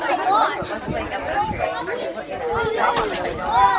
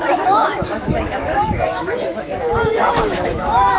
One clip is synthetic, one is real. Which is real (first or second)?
first